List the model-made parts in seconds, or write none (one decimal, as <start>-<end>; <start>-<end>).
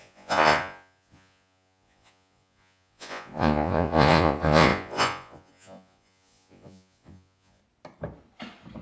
0.0-7.6